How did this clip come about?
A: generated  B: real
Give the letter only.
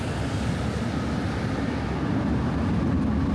B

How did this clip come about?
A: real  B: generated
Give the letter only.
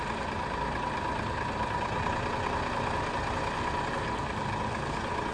A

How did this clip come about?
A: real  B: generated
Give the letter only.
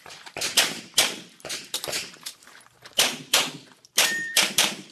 B